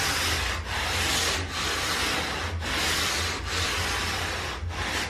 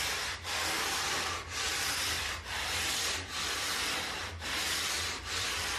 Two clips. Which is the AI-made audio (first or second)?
second